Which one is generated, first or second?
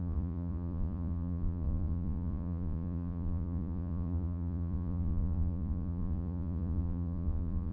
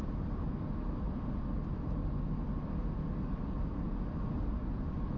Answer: first